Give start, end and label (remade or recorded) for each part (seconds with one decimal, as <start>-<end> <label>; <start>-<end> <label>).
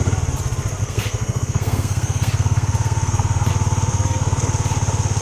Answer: 0.0-0.8 recorded; 0.8-3.5 remade; 3.5-3.9 recorded; 3.9-4.4 remade; 4.4-5.2 recorded